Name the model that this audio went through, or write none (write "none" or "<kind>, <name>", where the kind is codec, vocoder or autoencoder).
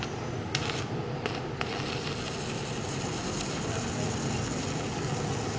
none